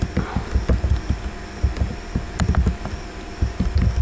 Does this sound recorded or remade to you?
recorded